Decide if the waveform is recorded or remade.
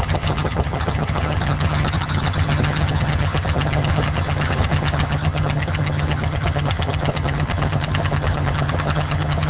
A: remade